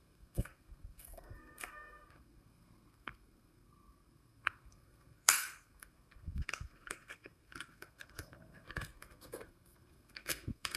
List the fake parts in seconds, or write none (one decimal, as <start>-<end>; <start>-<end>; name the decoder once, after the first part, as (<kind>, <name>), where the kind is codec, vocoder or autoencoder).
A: 0.0-10.8 (codec, SNAC)